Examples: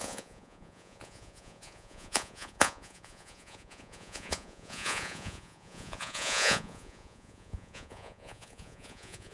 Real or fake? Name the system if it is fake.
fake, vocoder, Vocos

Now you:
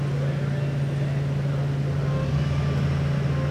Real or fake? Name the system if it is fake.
real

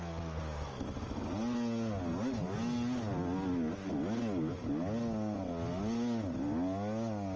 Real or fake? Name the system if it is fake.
real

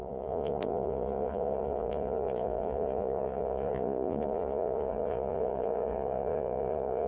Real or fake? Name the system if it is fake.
fake, vocoder, Vocos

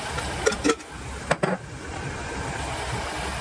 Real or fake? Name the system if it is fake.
real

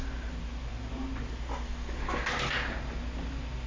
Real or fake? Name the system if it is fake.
real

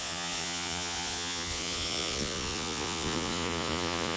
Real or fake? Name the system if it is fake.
fake, vocoder, Vocos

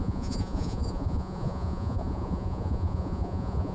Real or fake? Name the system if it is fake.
fake, vocoder, Vocos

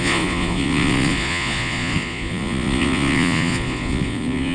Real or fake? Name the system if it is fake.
fake, vocoder, Vocos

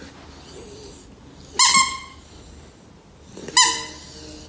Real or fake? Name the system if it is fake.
real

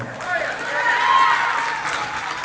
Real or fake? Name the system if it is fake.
real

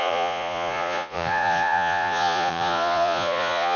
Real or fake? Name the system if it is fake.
fake, vocoder, Vocos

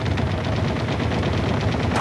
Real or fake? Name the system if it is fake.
real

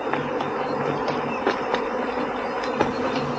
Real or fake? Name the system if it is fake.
real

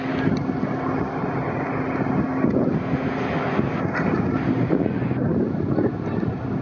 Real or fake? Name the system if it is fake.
real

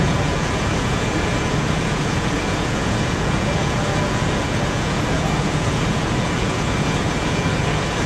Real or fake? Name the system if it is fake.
fake, vocoder, Vocos